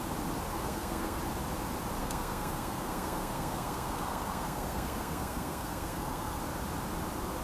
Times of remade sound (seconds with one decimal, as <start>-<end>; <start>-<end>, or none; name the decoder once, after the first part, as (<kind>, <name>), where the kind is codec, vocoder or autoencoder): 0.5-1.2 (codec, SNAC); 2.0-6.4